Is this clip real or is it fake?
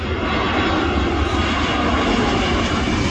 real